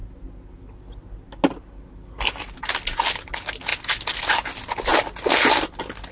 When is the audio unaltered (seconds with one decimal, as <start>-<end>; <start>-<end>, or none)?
0.0-6.1